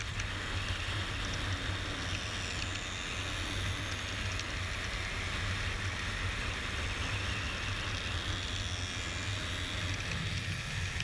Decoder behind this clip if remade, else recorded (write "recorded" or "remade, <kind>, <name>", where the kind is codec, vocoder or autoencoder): recorded